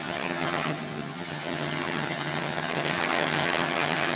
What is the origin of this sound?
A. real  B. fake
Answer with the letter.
B